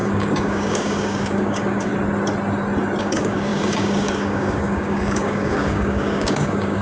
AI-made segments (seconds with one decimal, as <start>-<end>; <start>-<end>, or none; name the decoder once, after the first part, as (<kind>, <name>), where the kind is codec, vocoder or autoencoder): 0.0-1.9 (codec, DAC); 3.0-6.8